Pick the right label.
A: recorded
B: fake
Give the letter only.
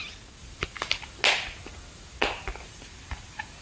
A